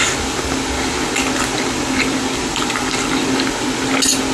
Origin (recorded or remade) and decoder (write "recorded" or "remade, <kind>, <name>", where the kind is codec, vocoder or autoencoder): recorded